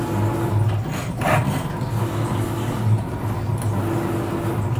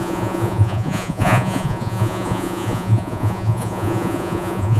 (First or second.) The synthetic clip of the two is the second